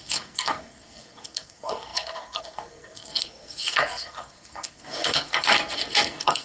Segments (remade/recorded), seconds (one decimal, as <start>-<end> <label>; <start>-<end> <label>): 0.0-6.4 remade